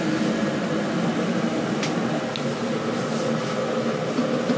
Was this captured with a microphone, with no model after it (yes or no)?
yes